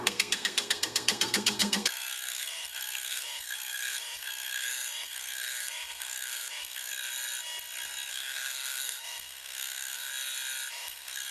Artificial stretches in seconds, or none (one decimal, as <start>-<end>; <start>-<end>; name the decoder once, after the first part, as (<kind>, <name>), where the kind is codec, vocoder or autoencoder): 0.0-6.9 (codec, SNAC); 8.1-10.1; 10.7-11.3